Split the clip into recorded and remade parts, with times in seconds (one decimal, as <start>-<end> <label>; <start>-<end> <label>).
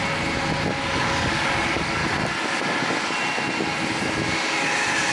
0.0-0.9 recorded; 0.9-2.0 remade; 2.0-5.1 recorded